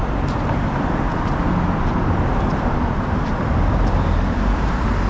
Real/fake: fake